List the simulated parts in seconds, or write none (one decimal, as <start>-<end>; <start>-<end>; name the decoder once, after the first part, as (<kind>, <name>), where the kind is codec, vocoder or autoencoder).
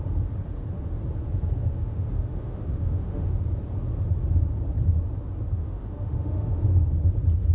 1.7-3.4 (autoencoder, DAC-VAE); 5.6-6.6